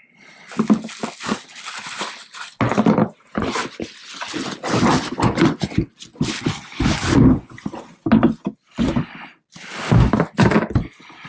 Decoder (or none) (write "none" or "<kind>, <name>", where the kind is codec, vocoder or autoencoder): none